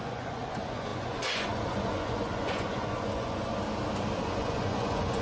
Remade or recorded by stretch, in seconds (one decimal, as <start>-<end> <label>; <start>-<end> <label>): 0.0-3.5 remade; 3.5-4.2 recorded; 4.2-5.2 remade